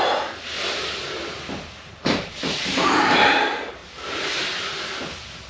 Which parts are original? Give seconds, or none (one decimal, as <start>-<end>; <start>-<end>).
3.8-5.5